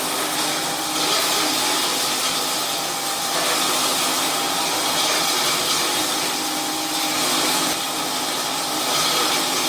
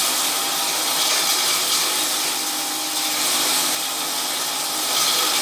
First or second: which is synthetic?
first